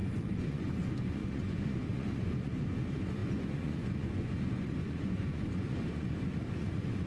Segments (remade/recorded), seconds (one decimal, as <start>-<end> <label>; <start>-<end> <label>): 0.0-7.1 remade